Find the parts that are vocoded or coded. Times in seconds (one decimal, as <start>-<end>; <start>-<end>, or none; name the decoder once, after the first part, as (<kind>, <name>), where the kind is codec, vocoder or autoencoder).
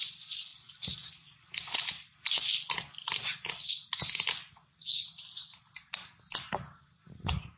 none